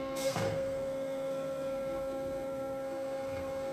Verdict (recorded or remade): remade